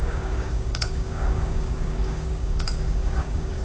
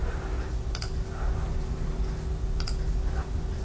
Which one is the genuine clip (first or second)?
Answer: second